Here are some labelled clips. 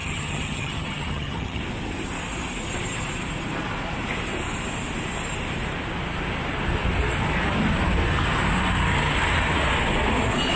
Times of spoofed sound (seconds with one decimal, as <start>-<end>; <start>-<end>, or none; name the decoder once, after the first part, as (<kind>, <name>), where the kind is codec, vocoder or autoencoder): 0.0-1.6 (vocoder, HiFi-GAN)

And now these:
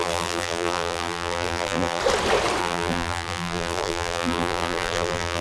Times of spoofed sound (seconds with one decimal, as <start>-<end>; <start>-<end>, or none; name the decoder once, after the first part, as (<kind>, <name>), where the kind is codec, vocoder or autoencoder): 0.0-2.0 (vocoder, BigVGAN v2); 2.6-5.4

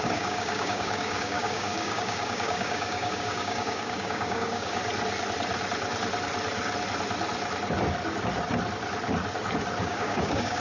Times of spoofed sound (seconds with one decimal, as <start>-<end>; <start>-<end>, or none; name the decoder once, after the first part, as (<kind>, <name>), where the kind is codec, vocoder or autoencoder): 0.0-4.8 (codec, DAC); 9.8-10.6